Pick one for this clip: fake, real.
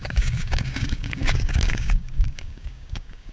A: fake